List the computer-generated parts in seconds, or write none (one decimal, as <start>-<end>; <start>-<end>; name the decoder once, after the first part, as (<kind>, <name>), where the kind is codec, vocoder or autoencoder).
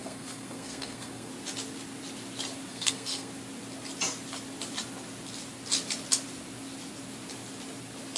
0.0-1.3 (codec, SNAC); 2.7-3.3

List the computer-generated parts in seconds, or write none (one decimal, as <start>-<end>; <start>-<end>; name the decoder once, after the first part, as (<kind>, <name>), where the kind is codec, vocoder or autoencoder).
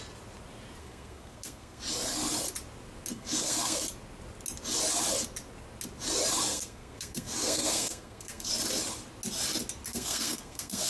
0.8-1.8 (codec, SNAC); 3.1-3.8; 6.5-8.5; 9.9-10.9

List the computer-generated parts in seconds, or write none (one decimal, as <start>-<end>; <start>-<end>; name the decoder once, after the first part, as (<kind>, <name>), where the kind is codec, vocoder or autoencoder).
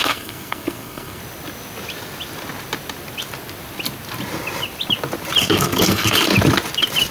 0.0-1.2 (codec, SNAC); 5.4-6.3